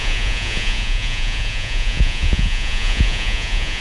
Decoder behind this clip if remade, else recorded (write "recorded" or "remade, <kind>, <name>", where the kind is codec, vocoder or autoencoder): remade, vocoder, Vocos